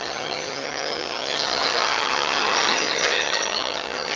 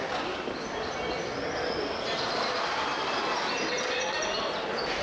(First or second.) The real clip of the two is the second